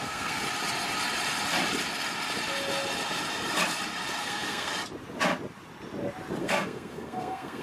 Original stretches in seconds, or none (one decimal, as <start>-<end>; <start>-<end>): 0.4-4.2; 4.7-6.4